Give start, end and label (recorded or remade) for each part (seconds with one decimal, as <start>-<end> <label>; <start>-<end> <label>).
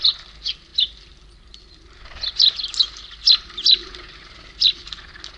0.0-5.4 recorded